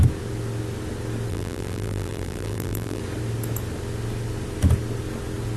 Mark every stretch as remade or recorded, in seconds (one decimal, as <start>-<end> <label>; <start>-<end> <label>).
0.0-1.3 recorded; 1.3-3.0 remade; 3.0-5.6 recorded